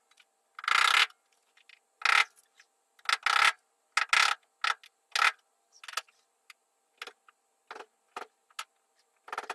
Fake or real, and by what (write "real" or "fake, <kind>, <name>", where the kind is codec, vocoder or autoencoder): real